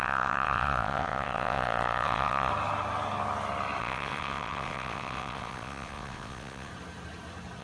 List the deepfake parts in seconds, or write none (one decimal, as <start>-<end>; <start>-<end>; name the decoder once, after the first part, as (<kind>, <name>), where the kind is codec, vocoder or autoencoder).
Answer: 0.0-2.5 (vocoder, WaveNeXt); 3.8-6.7

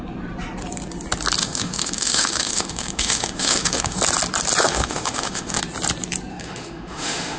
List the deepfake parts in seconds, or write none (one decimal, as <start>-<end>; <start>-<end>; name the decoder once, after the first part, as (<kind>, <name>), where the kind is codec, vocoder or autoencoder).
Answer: 1.4-4.0 (autoencoder, DAC-VAE); 4.6-5.6; 6.3-7.4

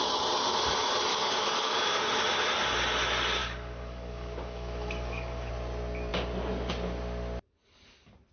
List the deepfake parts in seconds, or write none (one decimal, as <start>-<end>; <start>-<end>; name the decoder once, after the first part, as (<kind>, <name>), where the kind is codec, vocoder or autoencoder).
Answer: 1.1-2.0 (codec, DAC); 3.4-5.5

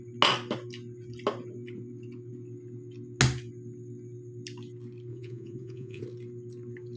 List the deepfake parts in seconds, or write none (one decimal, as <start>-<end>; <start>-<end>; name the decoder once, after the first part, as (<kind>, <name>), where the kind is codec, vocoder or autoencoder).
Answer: 5.1-6.0 (vocoder, Vocos)